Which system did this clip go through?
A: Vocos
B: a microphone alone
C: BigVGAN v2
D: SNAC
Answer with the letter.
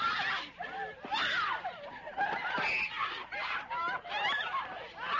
B